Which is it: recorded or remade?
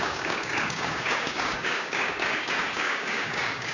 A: remade